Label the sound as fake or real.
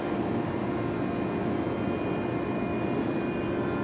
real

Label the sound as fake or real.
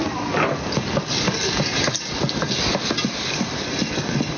real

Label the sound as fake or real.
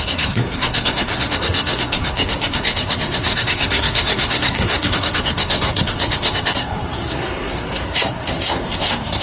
fake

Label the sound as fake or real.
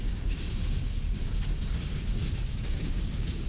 fake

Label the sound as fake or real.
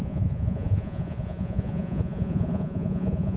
fake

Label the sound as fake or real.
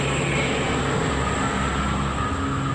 real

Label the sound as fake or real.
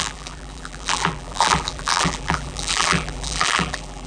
fake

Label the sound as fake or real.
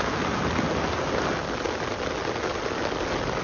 real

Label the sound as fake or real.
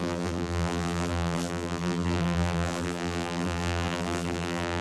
fake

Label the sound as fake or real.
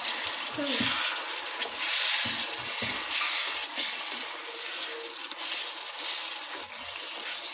real